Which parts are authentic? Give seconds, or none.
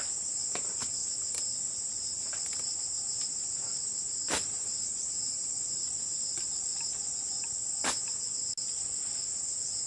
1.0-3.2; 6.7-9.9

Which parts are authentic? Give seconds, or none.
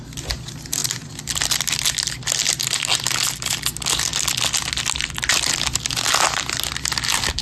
0.0-7.4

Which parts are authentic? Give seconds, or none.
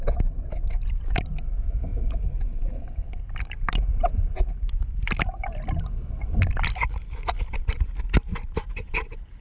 0.0-9.4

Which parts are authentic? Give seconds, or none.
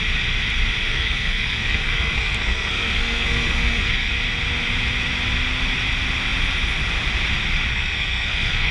0.0-0.9; 4.1-7.7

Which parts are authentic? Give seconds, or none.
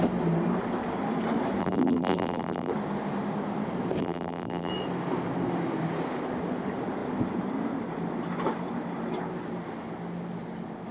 0.0-1.6; 2.7-4.0; 4.7-10.9